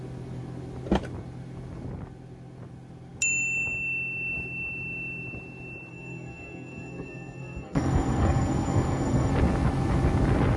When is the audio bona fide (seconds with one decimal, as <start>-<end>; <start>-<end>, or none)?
0.0-5.9; 9.3-10.6